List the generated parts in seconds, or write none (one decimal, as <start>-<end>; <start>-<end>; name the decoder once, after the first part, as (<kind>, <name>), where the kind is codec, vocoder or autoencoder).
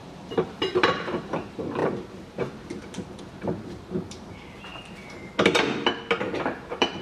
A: 0.0-4.7 (vocoder, BigVGAN v2); 6.4-7.0